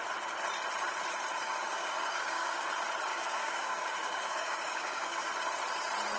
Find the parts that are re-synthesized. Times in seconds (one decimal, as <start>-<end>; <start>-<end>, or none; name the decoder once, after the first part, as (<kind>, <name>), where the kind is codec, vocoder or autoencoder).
1.3-2.7 (codec, DAC); 3.1-5.3